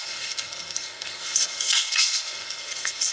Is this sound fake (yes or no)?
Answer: yes